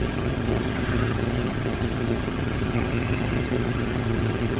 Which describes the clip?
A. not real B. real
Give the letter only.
A